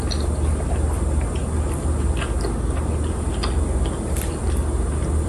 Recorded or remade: recorded